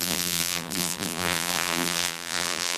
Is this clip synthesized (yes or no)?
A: yes